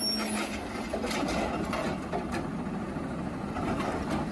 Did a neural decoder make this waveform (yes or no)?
no